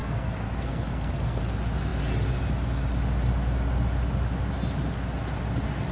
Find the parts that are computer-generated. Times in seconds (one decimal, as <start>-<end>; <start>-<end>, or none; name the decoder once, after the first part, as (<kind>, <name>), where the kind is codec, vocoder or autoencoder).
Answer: 0.0-1.4 (codec, SNAC)